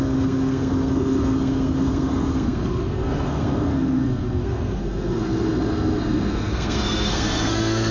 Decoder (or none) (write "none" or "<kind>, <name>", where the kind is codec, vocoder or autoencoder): codec, SNAC